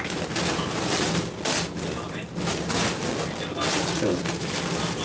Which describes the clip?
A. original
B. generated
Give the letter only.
A